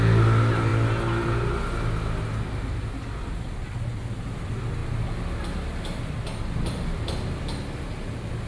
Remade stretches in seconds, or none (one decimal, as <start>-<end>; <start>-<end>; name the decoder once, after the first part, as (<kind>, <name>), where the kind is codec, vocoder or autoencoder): none